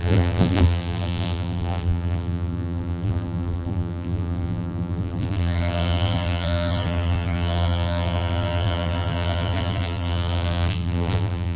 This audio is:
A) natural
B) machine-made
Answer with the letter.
B